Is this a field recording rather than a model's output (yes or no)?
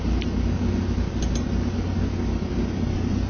yes